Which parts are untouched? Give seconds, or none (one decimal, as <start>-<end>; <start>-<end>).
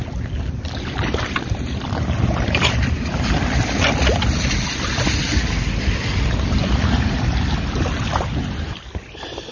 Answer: 0.0-9.5